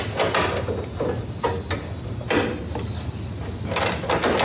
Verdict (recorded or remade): recorded